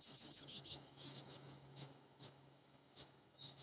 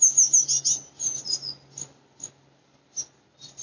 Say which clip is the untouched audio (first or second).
second